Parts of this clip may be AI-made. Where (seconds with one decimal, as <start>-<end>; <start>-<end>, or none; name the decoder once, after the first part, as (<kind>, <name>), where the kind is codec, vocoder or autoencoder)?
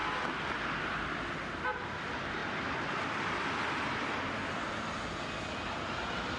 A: none